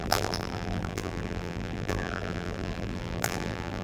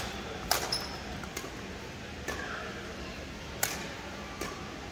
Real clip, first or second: second